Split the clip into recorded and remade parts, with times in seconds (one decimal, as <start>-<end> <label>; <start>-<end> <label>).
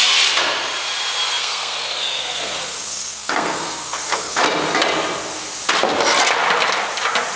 0.0-1.4 recorded; 1.4-4.4 remade; 4.4-7.4 recorded